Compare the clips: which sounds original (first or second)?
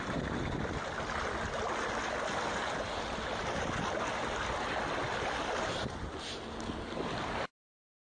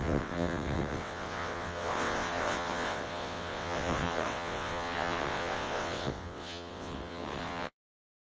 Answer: first